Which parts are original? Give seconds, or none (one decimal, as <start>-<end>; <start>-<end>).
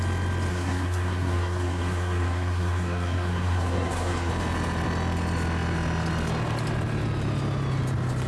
0.0-0.5; 4.3-8.3